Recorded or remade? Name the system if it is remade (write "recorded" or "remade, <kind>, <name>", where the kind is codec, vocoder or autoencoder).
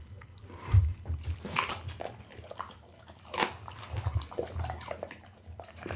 recorded